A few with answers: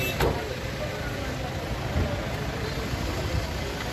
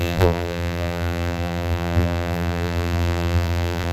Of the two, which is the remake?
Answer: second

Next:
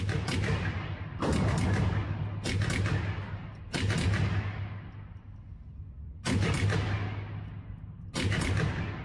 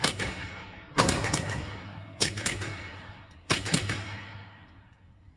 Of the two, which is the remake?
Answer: second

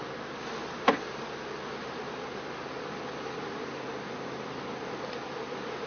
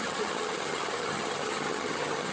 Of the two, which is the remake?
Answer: second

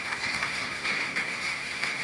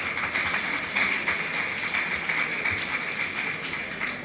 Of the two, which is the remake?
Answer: first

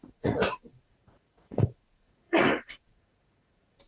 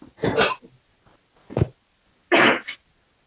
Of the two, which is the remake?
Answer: first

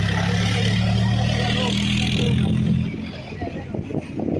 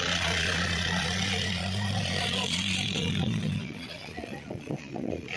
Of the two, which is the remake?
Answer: second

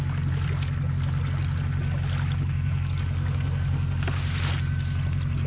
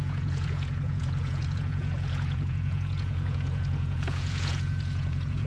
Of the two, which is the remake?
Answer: second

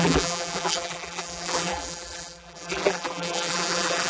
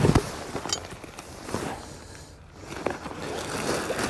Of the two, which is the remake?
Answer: first